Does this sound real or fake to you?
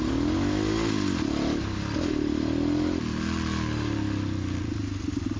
real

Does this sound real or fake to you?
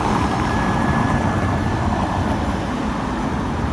fake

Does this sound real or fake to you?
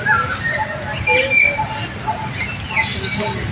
real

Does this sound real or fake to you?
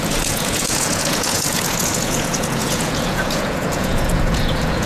fake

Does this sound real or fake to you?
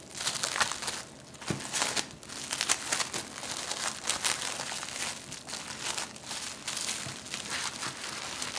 real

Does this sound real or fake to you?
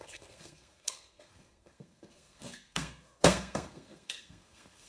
fake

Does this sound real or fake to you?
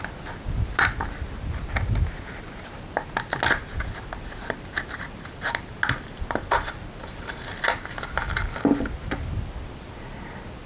real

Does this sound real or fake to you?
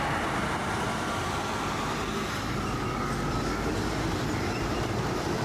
real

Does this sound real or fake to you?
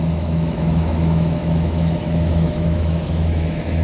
fake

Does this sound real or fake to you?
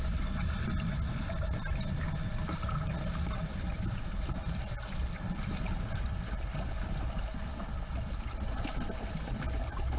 real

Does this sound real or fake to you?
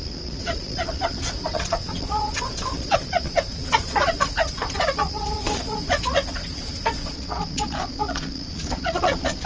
fake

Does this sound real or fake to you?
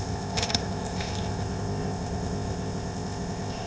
fake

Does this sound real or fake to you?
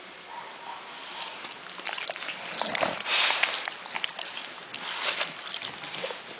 real